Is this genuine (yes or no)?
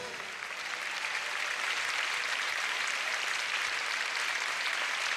yes